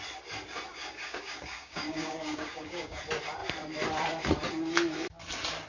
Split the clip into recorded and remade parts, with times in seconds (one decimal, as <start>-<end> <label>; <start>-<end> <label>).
0.0-0.7 recorded; 0.7-3.0 remade; 3.0-5.7 recorded